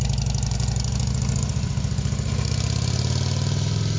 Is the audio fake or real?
real